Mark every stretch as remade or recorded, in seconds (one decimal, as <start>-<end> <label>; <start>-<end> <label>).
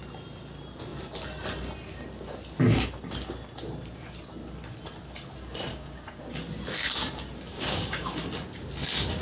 0.0-5.7 recorded; 5.7-6.2 remade; 6.2-7.5 recorded; 7.5-8.1 remade; 8.1-9.2 recorded